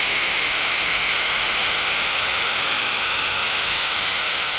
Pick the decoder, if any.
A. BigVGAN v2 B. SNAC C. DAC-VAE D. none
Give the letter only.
C